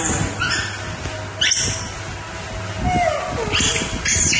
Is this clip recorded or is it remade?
recorded